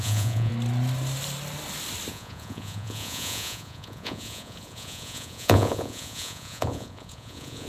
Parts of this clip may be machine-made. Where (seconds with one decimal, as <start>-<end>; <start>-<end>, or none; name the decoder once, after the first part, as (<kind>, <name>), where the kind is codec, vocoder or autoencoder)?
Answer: 0.0-0.5 (vocoder, Vocos); 2.1-7.7